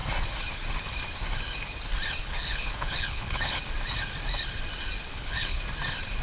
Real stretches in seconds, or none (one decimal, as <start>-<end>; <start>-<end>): 0.0-2.2; 3.6-5.1; 5.6-6.2